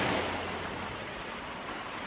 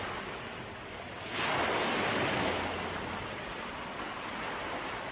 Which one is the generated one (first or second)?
first